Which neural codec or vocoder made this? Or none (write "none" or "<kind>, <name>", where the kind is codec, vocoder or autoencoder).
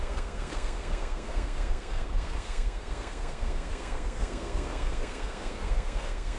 codec, SNAC